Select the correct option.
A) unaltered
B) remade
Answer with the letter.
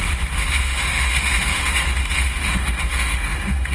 B